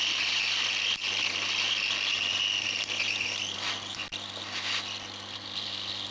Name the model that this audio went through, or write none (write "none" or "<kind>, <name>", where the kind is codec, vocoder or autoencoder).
none